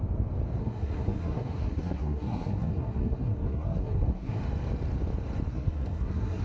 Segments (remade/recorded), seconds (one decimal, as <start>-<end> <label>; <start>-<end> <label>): 0.0-0.6 recorded; 0.6-4.4 remade; 4.4-5.5 recorded; 5.5-6.4 remade